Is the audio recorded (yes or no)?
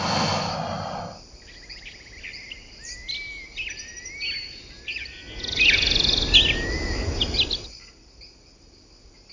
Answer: yes